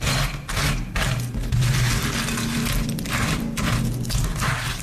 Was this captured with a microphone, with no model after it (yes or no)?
yes